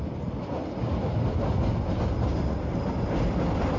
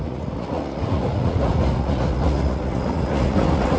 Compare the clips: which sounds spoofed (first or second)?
second